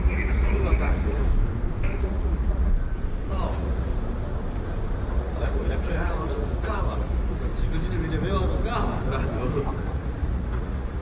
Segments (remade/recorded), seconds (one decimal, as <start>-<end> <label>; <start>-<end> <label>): 0.0-1.3 remade; 1.3-2.0 recorded; 2.0-2.7 remade; 2.7-3.3 recorded; 3.3-3.9 remade; 3.9-5.1 recorded; 5.1-7.5 remade; 7.5-9.8 recorded; 9.8-11.0 remade